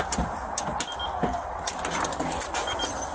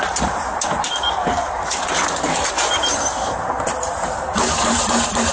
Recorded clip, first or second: first